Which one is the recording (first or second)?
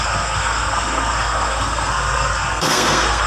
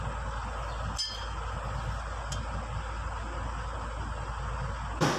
second